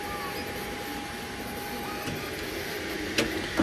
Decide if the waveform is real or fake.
real